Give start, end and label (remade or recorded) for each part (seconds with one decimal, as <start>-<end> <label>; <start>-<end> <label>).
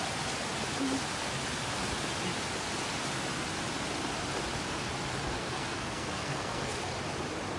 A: 0.0-5.4 recorded; 5.4-6.7 remade; 6.7-7.6 recorded